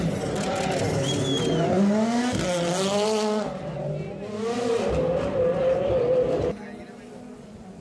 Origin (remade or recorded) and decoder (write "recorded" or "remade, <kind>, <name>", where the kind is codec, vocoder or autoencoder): recorded